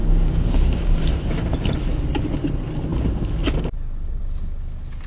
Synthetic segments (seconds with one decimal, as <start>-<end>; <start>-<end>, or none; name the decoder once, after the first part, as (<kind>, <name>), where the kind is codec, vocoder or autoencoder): 0.0-1.1 (codec, DAC)